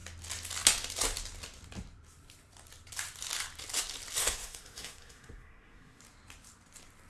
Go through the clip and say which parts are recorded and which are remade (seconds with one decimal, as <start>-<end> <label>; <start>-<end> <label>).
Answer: 0.0-4.2 recorded; 4.2-6.0 remade; 6.0-7.1 recorded